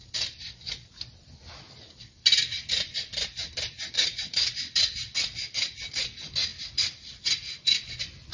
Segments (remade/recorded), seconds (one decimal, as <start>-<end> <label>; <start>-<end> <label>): 0.0-8.3 recorded